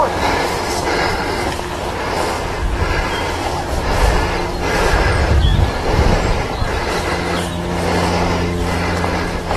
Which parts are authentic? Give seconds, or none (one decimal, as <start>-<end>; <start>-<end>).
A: 0.0-3.4; 3.9-5.5; 7.5-9.6

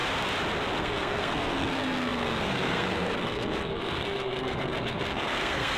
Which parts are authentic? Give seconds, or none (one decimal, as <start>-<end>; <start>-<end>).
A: 0.0-0.8

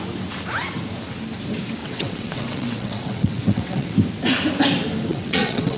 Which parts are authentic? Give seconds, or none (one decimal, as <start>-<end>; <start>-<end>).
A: 0.0-1.8; 3.9-5.1

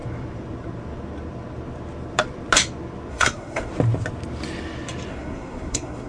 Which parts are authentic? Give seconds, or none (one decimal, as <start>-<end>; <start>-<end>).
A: 0.0-3.1; 3.7-5.1

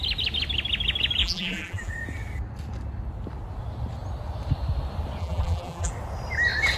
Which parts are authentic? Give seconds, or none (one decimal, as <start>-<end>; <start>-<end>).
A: 0.0-1.2; 1.9-5.2; 5.9-6.8

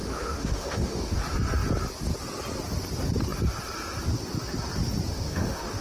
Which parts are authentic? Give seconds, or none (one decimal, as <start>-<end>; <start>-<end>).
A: 1.2-5.1